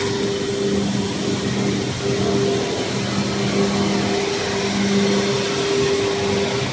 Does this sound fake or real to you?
real